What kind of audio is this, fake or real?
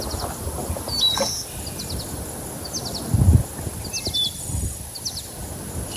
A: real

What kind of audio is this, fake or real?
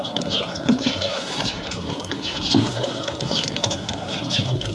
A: fake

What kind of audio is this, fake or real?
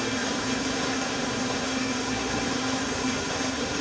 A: fake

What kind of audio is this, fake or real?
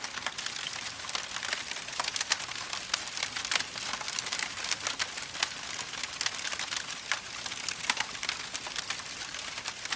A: real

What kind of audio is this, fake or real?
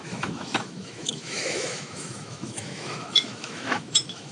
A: fake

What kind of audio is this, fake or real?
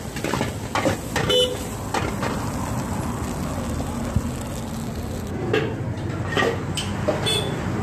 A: real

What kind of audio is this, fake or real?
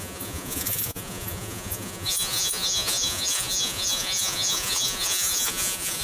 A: fake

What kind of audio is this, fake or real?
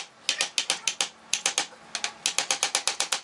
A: real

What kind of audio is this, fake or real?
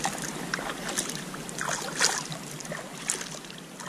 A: real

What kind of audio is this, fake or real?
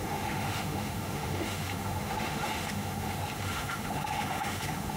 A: fake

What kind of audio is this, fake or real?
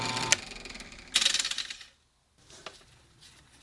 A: real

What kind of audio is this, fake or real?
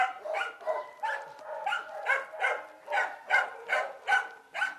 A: real